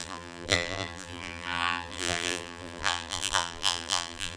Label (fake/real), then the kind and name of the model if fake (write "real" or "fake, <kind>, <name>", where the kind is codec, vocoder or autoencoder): fake, vocoder, BigVGAN v2